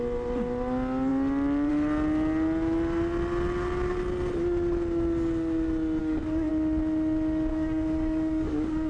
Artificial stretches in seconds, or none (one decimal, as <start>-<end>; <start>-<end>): 6.0-6.5; 7.5-8.9